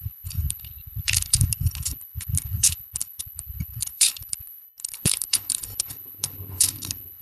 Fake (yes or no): yes